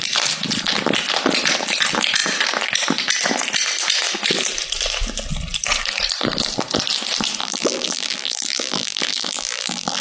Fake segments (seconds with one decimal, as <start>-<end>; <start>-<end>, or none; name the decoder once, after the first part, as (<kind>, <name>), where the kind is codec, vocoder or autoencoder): 7.4-10.0 (vocoder, BigVGAN v2)